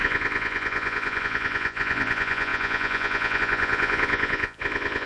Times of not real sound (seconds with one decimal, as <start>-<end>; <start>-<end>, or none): 0.0-5.1